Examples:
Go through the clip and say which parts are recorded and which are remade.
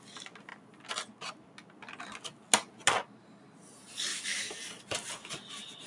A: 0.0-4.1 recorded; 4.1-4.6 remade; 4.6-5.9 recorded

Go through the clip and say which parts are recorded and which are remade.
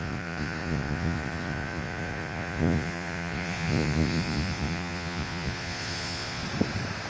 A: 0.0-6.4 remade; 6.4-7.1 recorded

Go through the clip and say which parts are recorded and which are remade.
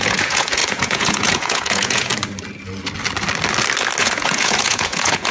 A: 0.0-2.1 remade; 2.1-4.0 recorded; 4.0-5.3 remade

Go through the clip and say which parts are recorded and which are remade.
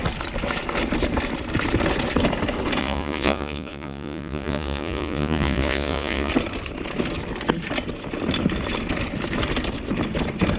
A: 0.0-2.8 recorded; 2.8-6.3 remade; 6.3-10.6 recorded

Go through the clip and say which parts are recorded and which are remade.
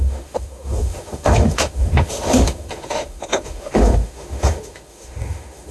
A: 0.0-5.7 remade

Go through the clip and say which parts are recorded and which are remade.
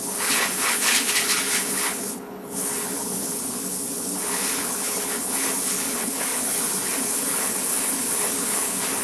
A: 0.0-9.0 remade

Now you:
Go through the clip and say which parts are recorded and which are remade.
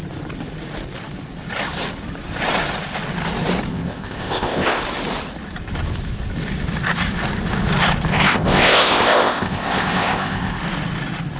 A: 0.0-3.7 recorded; 3.7-4.8 remade; 4.8-8.1 recorded; 8.1-10.6 remade; 10.6-11.4 recorded